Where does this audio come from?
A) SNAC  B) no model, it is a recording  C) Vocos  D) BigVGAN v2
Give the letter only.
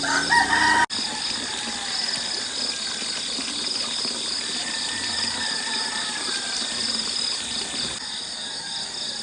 B